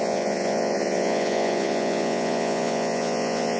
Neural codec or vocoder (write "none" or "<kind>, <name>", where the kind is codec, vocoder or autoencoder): vocoder, Vocos